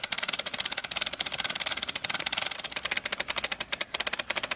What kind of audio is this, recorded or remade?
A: recorded